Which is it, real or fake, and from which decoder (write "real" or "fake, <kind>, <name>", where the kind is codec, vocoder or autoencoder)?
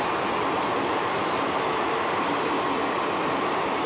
real